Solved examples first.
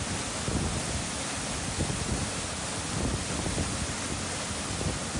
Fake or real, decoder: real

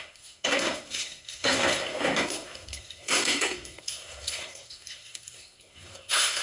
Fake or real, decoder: fake, codec, SNAC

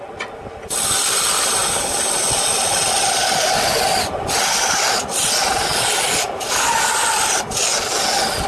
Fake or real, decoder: real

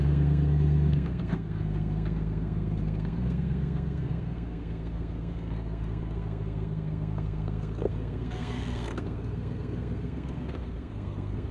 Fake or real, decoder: fake, codec, SNAC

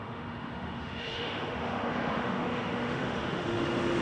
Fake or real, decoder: fake, autoencoder, DAC-VAE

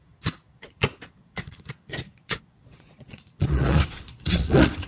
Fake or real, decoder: fake, vocoder, Vocos